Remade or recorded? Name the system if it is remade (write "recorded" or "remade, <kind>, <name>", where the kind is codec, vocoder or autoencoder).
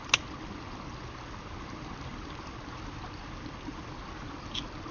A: recorded